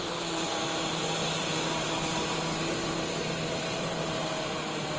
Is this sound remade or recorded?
remade